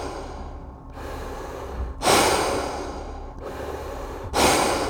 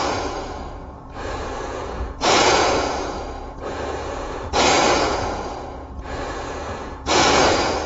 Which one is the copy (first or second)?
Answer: second